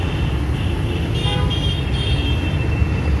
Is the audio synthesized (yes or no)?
no